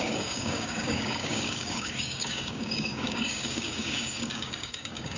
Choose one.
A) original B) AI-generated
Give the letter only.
B